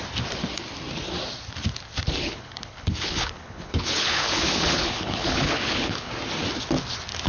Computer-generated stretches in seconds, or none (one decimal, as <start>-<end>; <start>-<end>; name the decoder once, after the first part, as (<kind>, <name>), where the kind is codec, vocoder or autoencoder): 2.2-6.1 (codec, HILCodec)